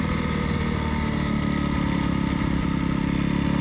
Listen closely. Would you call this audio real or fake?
real